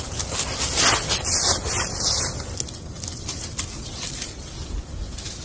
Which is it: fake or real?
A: real